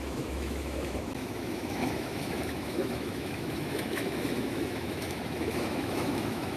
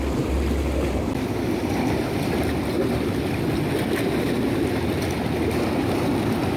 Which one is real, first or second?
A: second